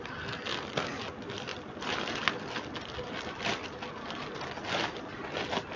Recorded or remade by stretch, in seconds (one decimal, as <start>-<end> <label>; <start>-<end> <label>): 0.0-5.8 recorded